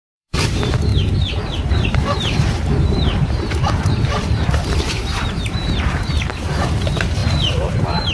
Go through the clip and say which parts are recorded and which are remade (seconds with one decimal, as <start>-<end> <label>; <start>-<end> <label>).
0.0-0.9 remade; 0.9-1.7 recorded; 1.7-8.1 remade